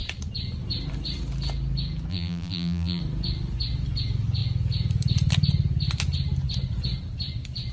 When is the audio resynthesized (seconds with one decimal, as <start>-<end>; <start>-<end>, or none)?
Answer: 2.1-3.0